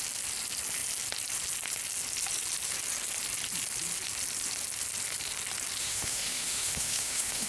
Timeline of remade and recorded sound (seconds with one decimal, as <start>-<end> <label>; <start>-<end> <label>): 0.0-5.8 recorded; 5.8-7.5 remade